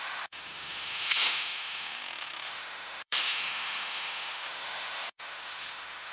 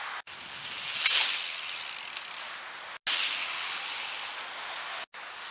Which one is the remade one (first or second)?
first